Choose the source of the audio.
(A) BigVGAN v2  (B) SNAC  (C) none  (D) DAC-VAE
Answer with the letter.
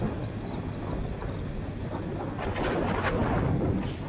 C